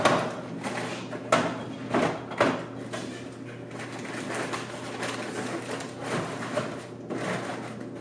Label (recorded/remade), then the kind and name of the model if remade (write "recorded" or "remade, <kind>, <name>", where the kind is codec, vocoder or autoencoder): recorded